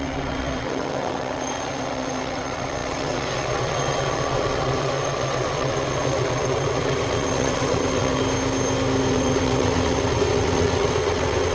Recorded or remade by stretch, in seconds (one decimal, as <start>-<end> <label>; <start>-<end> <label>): 0.0-8.2 remade; 8.2-9.1 recorded; 9.1-11.5 remade